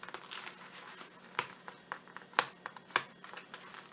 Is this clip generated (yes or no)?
no